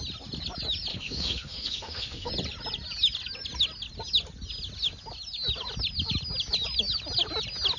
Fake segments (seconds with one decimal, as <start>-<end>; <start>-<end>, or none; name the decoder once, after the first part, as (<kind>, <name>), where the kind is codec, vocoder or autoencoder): 0.9-2.3 (autoencoder, DAC-VAE)